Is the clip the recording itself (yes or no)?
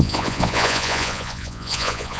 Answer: no